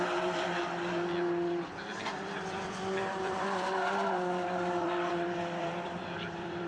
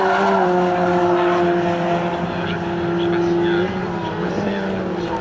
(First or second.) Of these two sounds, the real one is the second